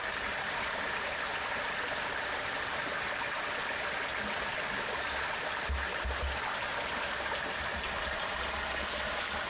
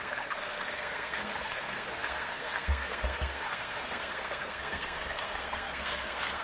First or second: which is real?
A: first